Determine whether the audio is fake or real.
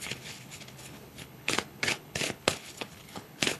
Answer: fake